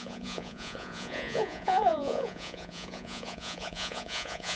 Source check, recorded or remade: remade